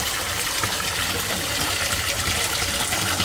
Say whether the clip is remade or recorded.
remade